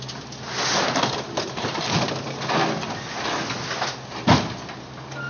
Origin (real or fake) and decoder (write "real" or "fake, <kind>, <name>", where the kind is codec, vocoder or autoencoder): real